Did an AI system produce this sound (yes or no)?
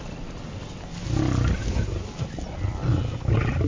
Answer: no